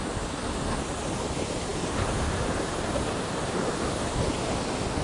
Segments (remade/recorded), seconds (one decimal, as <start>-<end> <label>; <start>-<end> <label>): 0.0-1.7 recorded; 1.7-4.2 remade; 4.2-5.0 recorded